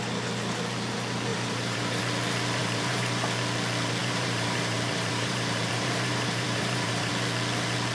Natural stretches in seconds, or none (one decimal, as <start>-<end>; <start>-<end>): 0.0-1.3; 2.0-2.6; 3.2-4.0; 7.1-7.9